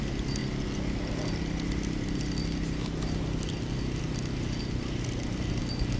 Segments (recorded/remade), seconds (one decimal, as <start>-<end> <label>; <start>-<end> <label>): 0.0-6.0 recorded